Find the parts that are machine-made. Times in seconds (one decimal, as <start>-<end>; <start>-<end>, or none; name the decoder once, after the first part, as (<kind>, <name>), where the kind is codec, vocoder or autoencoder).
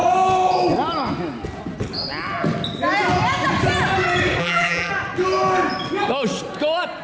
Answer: 4.4-4.9 (vocoder, BigVGAN v2)